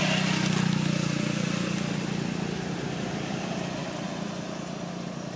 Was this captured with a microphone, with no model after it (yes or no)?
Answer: yes